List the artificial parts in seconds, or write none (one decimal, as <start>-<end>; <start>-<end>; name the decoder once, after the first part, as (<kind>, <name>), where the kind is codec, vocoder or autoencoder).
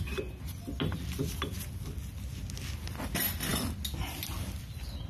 none